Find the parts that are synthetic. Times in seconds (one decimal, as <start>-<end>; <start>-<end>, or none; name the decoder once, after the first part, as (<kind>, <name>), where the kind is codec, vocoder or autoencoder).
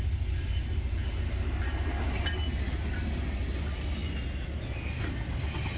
none